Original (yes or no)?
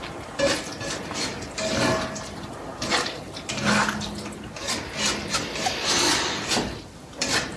yes